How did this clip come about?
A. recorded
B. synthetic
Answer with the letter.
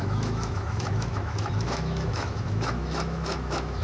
B